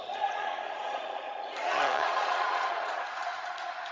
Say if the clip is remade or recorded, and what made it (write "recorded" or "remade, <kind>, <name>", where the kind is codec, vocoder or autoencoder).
remade, vocoder, Vocos